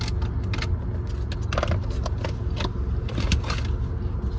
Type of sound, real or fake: real